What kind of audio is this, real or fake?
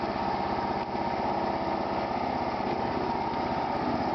real